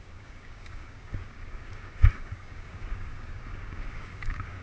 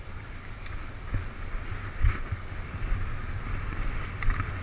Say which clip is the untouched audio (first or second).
second